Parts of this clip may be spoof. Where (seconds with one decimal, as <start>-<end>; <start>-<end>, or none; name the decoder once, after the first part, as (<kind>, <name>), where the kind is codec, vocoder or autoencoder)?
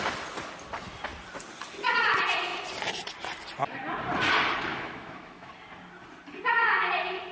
4.7-5.5 (autoencoder, DAC-VAE)